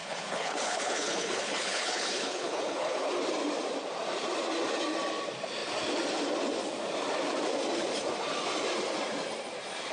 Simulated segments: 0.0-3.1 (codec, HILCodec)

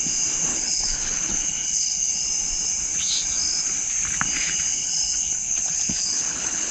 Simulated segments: 0.5-2.1 (codec, HILCodec); 4.7-6.7

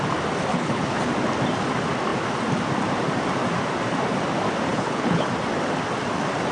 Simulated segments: 0.5-1.0 (codec, HILCodec); 4.7-5.3

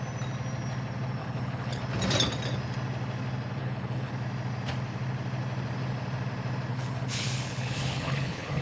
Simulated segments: 1.2-1.8 (codec, HILCodec); 3.6-4.1; 6.7-8.6

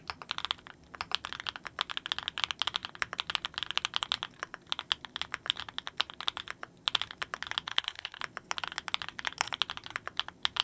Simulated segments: 7.7-8.2 (codec, HILCodec)

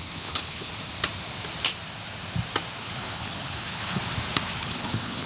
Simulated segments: 0.0-0.7 (codec, HILCodec); 2.8-4.0; 4.6-5.3

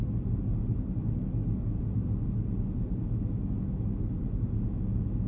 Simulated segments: none